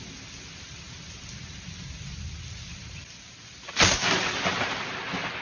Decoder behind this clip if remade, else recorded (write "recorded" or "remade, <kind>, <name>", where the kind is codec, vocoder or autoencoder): recorded